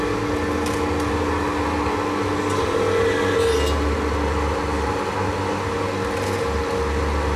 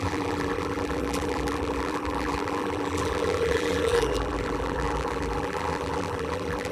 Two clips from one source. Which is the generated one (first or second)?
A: second